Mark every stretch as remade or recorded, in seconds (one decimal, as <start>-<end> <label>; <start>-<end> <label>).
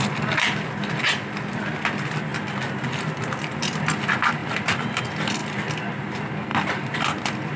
0.0-4.4 recorded; 4.4-5.0 remade; 5.0-6.5 recorded; 6.5-7.6 remade